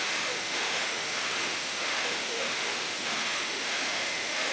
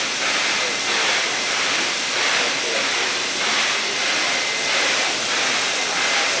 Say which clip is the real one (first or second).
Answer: second